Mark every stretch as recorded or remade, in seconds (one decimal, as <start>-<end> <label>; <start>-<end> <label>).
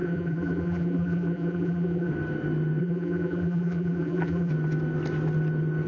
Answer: 0.0-2.1 remade; 2.1-2.8 recorded; 2.8-4.5 remade; 4.5-5.9 recorded